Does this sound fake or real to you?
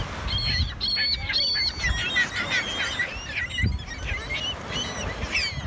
real